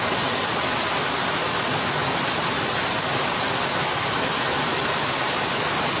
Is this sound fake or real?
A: real